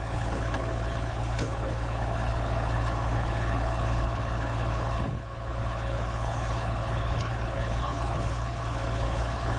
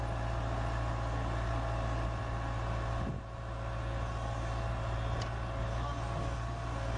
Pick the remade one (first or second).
first